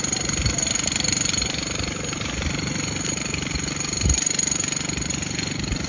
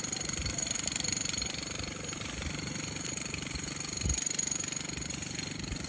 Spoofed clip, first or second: second